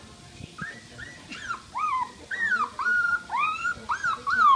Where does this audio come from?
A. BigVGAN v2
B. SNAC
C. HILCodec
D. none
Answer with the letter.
D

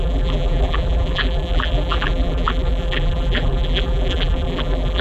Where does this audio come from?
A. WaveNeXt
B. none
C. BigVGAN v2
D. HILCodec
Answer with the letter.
C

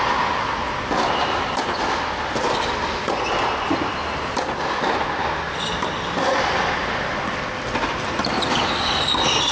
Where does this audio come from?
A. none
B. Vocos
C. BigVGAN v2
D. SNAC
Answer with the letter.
A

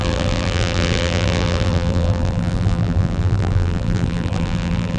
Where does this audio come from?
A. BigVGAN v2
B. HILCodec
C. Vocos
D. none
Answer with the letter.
A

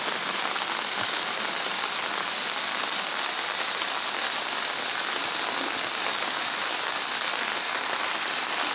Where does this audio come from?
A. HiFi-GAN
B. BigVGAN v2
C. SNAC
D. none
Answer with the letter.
D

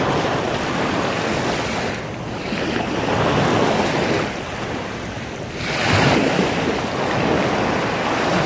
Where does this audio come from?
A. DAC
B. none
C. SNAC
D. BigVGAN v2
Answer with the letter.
B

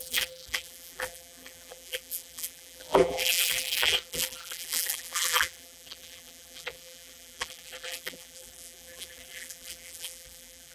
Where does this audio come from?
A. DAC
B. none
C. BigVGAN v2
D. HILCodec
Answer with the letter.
C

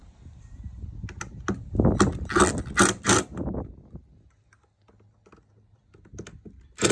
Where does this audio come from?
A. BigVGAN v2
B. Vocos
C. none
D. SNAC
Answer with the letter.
C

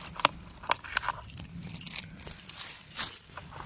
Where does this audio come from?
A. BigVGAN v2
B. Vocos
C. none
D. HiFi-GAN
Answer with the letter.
C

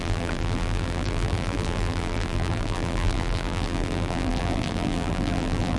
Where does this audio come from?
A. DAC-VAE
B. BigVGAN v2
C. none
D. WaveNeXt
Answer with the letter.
B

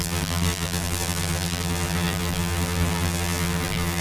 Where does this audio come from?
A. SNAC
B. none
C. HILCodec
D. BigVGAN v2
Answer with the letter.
D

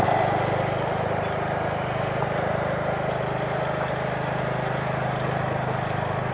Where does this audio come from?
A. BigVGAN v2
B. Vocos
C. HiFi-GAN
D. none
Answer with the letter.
D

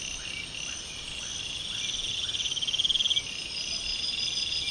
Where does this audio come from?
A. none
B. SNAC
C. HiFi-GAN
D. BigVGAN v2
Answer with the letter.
A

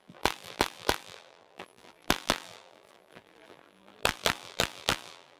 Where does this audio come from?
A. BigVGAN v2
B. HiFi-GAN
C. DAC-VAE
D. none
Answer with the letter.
A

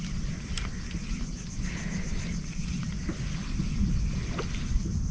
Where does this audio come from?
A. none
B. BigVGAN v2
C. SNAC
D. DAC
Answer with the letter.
A